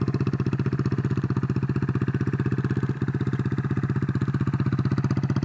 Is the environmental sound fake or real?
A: real